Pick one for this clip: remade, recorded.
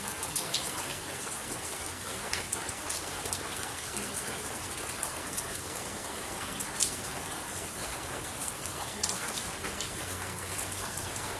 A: remade